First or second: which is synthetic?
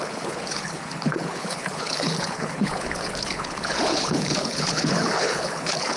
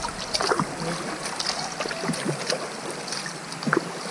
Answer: first